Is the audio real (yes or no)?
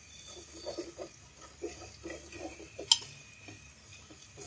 yes